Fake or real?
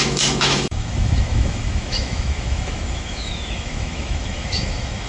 fake